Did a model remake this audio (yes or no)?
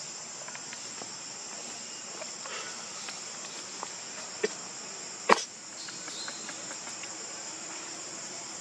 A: no